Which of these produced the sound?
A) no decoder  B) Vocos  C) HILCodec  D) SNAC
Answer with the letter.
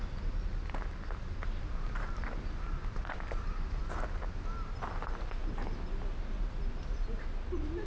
A